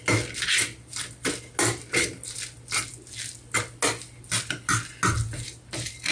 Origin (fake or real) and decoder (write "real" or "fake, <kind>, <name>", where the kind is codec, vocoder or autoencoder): real